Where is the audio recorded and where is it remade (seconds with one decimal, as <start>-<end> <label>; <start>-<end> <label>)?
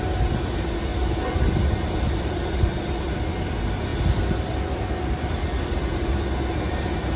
0.0-7.2 recorded